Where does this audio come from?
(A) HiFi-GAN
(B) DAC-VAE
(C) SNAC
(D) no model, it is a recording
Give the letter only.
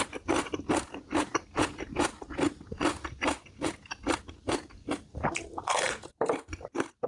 D